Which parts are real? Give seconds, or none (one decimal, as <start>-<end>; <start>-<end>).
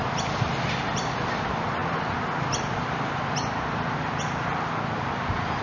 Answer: 0.0-5.6